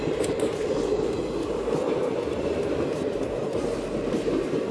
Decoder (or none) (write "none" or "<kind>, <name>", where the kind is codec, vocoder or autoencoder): none